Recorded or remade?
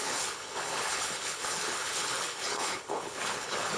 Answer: remade